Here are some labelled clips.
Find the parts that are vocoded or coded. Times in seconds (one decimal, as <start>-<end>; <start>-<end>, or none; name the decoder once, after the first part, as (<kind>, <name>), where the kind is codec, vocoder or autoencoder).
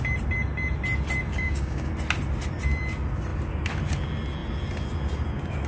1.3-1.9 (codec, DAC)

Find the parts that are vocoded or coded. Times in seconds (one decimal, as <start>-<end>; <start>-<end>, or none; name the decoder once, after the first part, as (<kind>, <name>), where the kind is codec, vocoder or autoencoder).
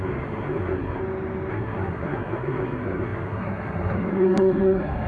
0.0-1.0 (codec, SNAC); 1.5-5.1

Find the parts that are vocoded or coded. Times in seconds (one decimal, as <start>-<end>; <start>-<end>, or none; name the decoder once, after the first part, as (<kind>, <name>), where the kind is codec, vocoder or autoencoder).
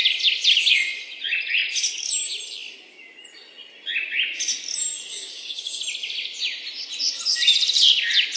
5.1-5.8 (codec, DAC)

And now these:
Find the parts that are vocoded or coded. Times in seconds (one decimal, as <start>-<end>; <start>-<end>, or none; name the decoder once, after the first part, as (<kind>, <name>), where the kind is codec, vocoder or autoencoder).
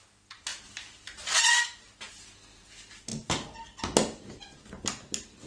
0.5-1.4 (vocoder, BigVGAN v2)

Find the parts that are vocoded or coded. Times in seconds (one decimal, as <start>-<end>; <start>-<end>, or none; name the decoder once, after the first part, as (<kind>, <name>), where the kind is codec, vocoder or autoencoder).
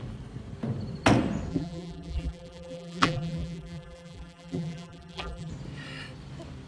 1.5-5.5 (vocoder, BigVGAN v2)